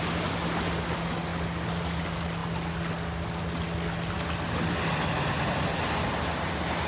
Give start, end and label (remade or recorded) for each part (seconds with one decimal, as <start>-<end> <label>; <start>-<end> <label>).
0.0-6.9 recorded